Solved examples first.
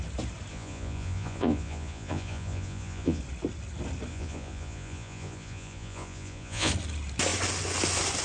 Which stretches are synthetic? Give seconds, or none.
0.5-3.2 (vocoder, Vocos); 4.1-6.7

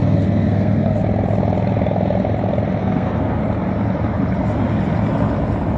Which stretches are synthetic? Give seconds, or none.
0.0-1.0 (codec, SNAC); 2.8-3.4